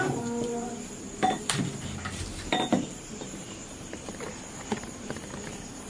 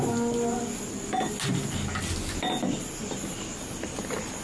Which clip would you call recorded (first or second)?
second